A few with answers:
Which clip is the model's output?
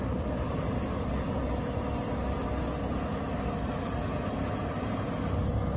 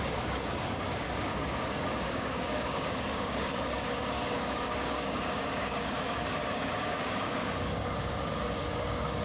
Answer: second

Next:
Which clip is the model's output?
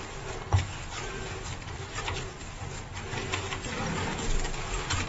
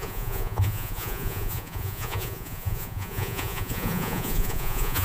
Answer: second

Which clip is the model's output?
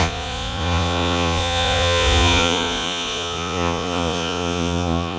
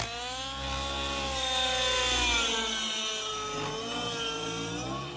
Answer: first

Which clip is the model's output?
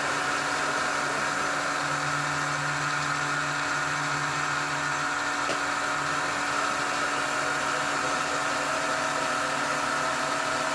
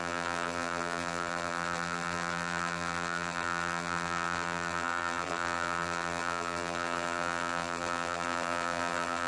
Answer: second